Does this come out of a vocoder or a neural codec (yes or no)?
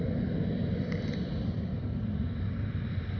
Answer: no